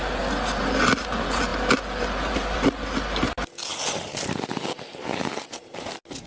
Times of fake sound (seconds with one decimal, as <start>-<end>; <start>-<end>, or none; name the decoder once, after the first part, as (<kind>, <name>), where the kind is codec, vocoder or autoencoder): none